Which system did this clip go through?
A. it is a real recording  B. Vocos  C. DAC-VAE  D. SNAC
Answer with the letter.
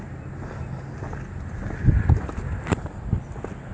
A